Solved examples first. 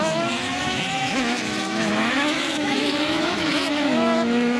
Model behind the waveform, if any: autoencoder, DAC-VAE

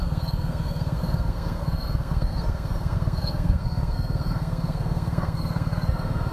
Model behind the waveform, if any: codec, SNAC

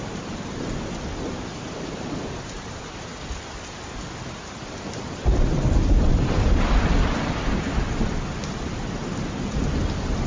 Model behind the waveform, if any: none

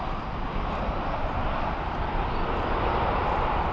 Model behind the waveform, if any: none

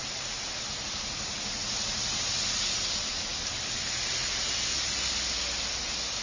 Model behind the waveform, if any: none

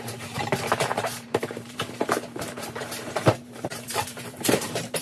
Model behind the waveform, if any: vocoder, BigVGAN v2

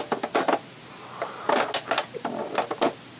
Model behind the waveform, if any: none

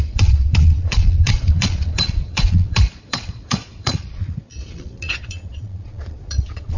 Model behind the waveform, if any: vocoder, Vocos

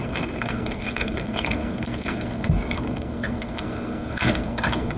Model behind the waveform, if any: codec, SNAC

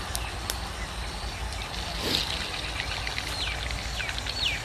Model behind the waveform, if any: none